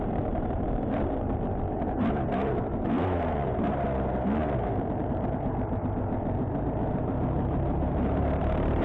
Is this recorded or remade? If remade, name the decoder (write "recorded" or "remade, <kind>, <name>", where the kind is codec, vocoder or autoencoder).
remade, vocoder, BigVGAN v2